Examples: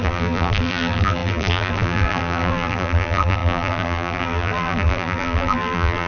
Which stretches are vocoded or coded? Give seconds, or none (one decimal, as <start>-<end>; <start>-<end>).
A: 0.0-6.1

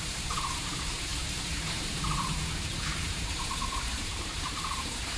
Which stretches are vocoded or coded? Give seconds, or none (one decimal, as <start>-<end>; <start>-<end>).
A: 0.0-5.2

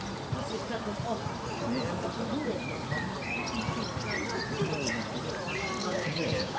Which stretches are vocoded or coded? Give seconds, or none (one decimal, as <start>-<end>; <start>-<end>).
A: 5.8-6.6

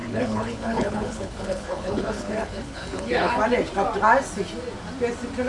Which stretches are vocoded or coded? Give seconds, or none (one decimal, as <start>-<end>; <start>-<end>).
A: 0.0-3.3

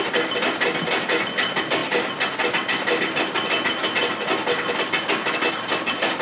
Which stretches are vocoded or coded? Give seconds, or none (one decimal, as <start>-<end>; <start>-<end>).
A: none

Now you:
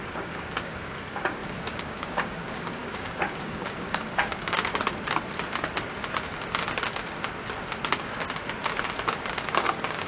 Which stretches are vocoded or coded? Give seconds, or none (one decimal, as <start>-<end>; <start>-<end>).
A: 0.0-4.7; 9.3-10.1

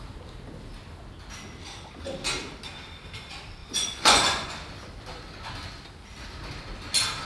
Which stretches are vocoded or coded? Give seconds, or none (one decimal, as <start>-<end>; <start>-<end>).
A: 3.6-4.5

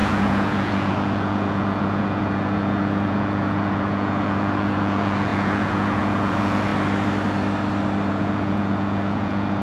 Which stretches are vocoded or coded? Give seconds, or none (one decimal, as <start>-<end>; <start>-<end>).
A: 0.0-6.7; 8.1-9.6